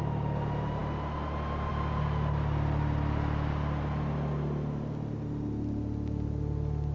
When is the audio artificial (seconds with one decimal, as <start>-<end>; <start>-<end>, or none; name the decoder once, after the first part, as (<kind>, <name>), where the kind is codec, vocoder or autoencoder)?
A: none